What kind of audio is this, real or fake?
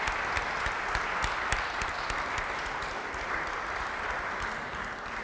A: real